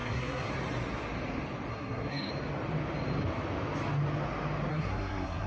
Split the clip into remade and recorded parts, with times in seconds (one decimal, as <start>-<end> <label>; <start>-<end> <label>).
0.0-0.5 remade; 0.5-1.7 recorded; 1.7-2.3 remade; 2.3-4.7 recorded; 4.7-5.5 remade